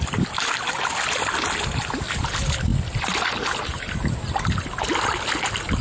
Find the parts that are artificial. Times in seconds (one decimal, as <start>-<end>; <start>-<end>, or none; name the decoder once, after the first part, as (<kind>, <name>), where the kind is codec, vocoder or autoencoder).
none